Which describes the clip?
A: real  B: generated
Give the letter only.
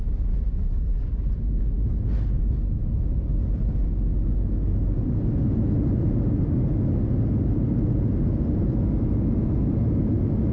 A